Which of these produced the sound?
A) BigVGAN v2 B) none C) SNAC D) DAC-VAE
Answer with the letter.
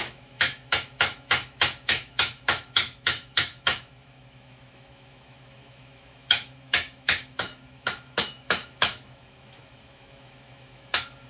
D